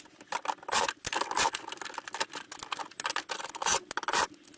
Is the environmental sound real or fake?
real